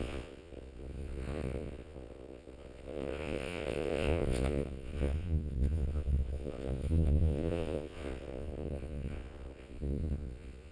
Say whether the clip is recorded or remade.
remade